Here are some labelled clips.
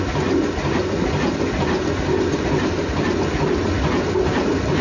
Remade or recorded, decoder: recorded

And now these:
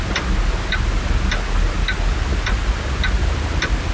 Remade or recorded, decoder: recorded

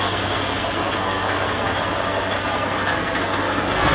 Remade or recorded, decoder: remade, codec, SNAC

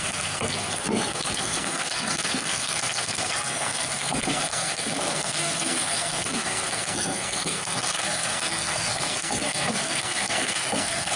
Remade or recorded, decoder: remade, codec, SNAC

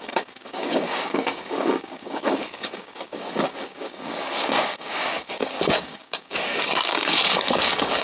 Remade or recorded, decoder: remade, codec, DAC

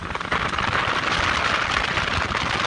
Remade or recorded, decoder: recorded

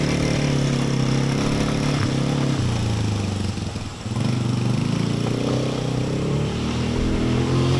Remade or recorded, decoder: recorded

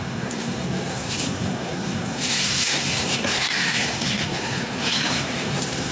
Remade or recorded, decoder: remade, codec, SNAC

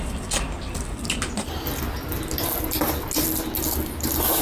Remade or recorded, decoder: recorded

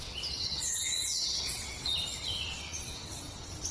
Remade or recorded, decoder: remade, vocoder, WaveNeXt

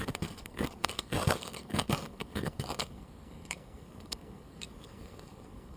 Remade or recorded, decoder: remade, codec, SNAC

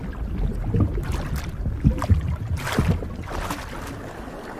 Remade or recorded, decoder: recorded